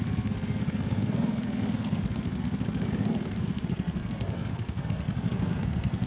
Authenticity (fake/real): fake